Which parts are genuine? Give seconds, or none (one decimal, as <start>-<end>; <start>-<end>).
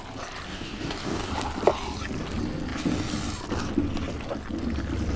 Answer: 0.0-0.5; 1.3-5.2